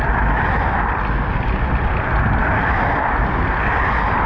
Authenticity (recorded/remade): recorded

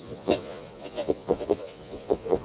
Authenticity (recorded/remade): remade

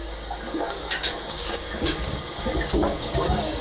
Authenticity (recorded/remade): remade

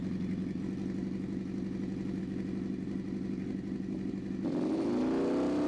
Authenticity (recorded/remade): recorded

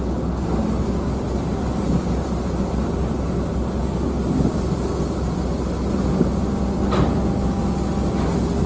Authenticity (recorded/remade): recorded